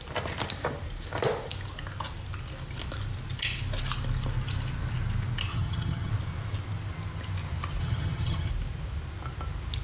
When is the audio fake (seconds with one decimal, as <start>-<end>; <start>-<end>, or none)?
5.5-6.1; 7.8-8.5